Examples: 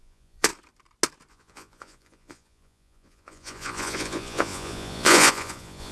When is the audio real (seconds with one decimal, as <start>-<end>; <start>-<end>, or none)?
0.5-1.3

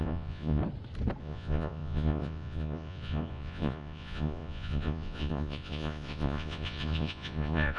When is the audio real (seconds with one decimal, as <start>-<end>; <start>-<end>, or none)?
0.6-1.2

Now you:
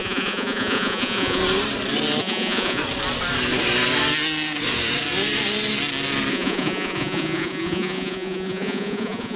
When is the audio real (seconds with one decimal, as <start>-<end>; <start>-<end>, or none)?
1.4-2.2; 2.8-6.3

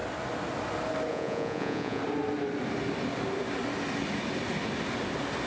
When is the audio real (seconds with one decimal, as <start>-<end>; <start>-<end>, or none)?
0.0-1.1; 2.0-5.5